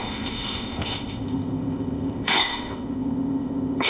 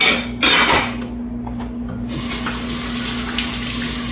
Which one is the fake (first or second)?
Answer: first